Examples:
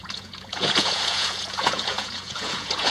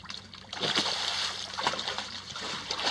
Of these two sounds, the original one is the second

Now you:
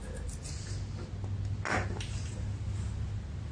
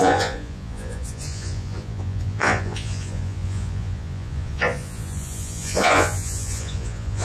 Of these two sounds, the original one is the first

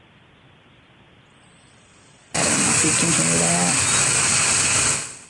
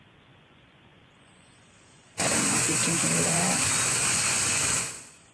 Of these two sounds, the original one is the first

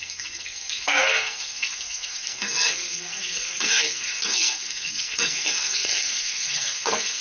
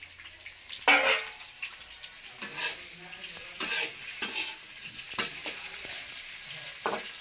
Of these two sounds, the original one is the second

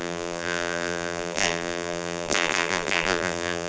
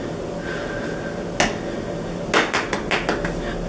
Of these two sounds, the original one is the second